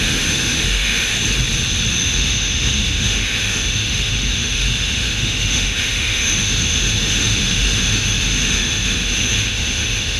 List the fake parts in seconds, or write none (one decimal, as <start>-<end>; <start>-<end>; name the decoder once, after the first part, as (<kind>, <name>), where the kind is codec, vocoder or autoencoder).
0.0-1.1 (autoencoder, DAC-VAE); 1.9-10.2